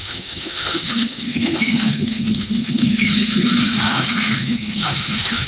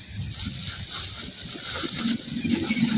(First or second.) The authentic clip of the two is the second